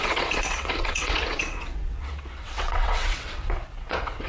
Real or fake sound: fake